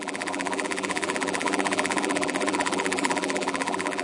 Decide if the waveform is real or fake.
fake